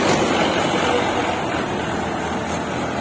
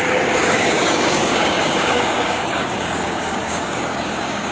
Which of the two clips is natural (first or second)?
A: first